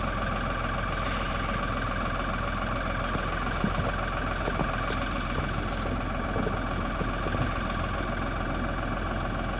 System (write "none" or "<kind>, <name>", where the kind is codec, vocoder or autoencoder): none